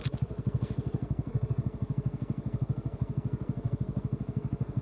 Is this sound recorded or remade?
remade